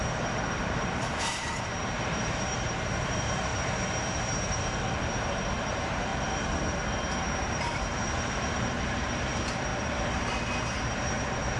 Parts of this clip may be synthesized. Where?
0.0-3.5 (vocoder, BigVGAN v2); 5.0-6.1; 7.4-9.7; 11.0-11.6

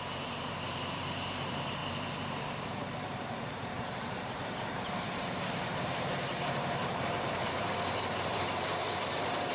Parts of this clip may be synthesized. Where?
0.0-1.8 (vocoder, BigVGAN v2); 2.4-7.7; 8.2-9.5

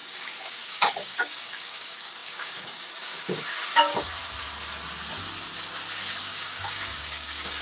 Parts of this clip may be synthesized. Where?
0.0-4.2 (codec, DAC); 6.2-7.6